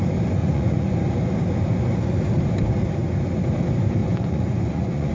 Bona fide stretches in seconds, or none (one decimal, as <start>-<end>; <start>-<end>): 0.0-0.4; 1.0-4.0